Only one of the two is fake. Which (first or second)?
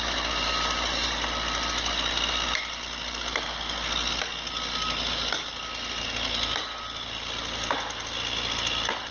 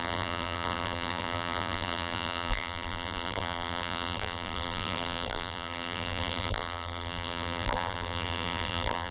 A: second